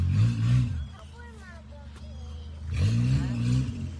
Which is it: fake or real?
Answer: real